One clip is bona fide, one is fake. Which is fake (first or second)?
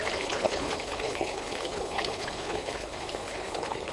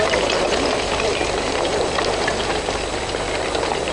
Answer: first